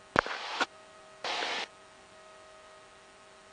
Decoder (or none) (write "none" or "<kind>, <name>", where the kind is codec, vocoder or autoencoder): none